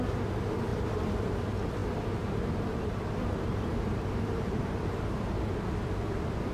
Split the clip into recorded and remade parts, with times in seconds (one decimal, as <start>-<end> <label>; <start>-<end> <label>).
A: 0.0-0.7 recorded; 0.7-1.3 remade; 1.3-1.8 recorded; 1.8-5.7 remade; 5.7-6.5 recorded